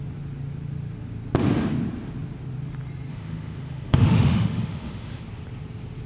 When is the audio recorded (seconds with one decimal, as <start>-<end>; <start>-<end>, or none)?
0.0-3.1; 5.2-6.1